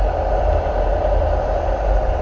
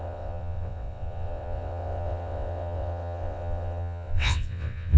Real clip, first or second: first